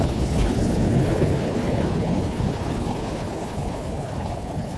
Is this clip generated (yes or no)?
yes